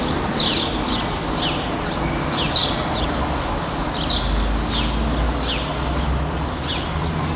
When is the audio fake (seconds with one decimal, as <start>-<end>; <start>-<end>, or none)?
none